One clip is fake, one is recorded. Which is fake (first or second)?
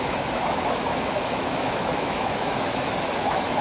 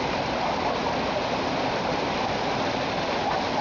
first